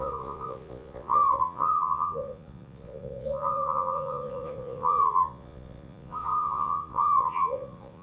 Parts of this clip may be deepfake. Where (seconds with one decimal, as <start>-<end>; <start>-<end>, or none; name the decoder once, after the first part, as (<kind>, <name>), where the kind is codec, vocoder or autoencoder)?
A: 0.0-8.0 (vocoder, Vocos)